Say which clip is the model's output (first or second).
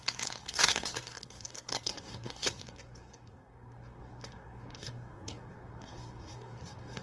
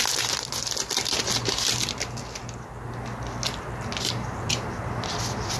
first